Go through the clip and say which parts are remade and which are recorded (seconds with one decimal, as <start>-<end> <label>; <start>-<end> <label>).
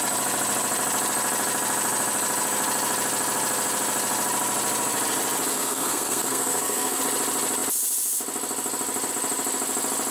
0.0-5.5 recorded; 5.5-7.0 remade; 7.0-10.1 recorded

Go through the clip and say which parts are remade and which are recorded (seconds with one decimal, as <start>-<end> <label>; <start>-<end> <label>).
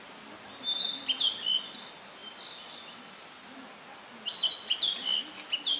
0.0-2.2 recorded; 2.2-3.6 remade; 3.6-5.8 recorded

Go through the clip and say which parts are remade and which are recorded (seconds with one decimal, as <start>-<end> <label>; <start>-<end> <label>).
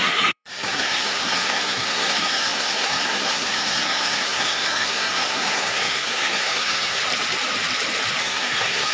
0.0-7.0 remade; 7.0-8.2 recorded; 8.2-8.9 remade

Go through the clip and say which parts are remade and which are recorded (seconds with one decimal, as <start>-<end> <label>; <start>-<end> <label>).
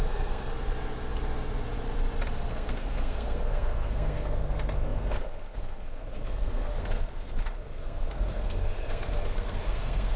0.0-0.5 remade; 0.5-2.5 recorded; 2.5-10.2 remade